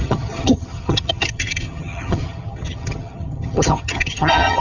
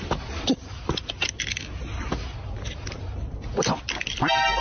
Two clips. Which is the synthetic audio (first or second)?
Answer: first